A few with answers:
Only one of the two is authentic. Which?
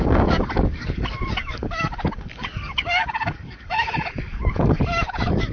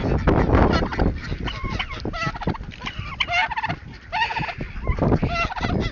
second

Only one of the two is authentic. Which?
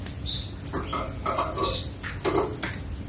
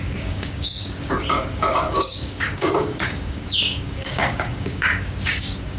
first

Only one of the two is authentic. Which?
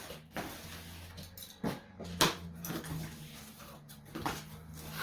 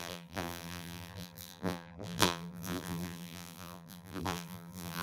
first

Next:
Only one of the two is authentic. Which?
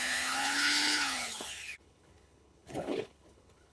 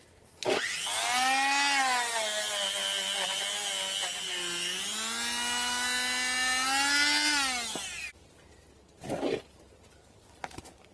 second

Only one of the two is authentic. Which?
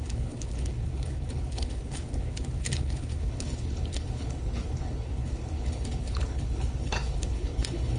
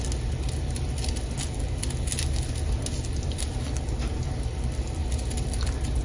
second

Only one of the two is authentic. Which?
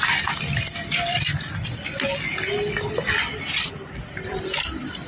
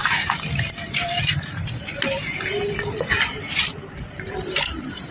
first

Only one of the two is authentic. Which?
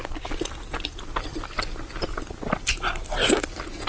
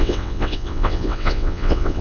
first